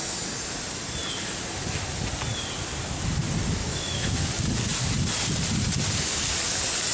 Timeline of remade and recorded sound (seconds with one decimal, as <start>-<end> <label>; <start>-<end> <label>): 0.0-3.6 recorded; 3.6-4.1 remade; 4.1-6.9 recorded